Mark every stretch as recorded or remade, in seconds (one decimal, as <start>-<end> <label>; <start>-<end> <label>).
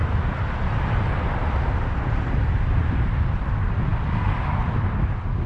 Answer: 0.0-5.5 recorded